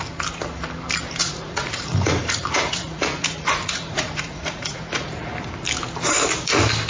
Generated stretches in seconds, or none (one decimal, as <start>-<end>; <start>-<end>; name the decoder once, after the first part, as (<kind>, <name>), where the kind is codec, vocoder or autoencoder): 1.2-5.3 (vocoder, Vocos)